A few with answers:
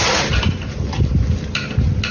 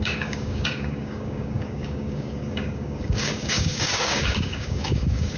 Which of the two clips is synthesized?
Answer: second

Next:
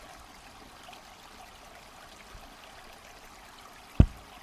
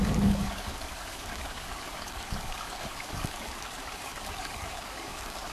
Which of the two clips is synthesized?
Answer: second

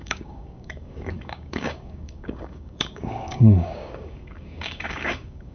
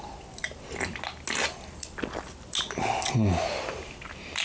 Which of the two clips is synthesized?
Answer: first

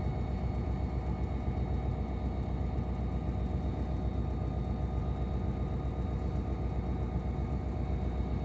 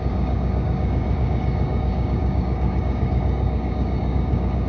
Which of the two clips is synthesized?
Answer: second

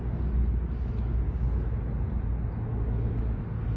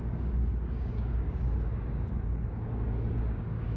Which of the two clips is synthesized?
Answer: second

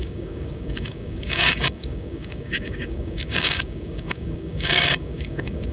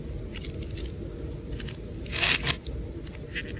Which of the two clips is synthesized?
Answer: first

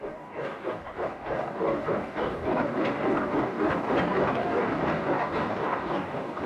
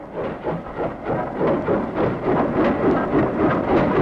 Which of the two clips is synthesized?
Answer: first